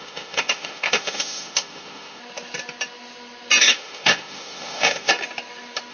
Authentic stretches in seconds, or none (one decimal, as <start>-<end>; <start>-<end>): 2.2-3.6; 5.1-5.9